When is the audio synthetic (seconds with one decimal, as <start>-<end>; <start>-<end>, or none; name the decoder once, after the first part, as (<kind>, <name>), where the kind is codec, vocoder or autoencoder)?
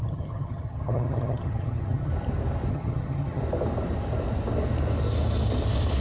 0.0-2.1 (vocoder, HiFi-GAN); 2.7-3.4